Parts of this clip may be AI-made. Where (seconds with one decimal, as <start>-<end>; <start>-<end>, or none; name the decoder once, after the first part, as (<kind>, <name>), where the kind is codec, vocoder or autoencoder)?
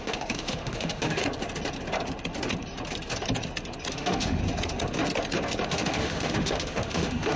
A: 0.0-1.2 (autoencoder, DAC-VAE); 3.9-4.4; 5.7-7.4